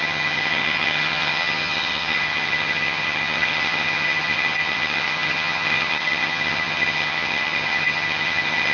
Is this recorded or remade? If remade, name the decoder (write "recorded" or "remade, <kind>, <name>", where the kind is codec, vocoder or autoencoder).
remade, vocoder, HiFi-GAN